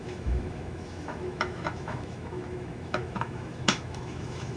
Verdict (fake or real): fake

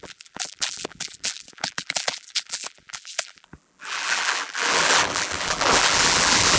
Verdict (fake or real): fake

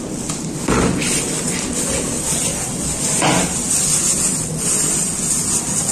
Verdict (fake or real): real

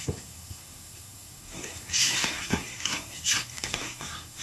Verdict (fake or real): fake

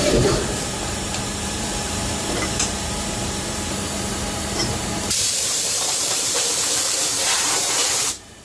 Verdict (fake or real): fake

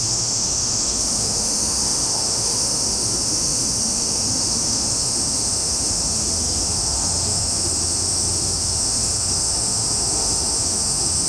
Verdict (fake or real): fake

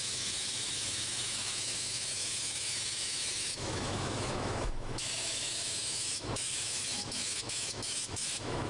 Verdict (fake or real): fake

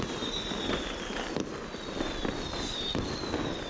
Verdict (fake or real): real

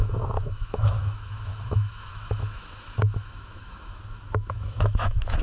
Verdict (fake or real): fake